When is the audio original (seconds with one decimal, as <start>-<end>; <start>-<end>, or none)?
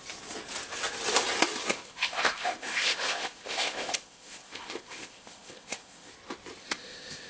0.0-1.7; 6.1-6.6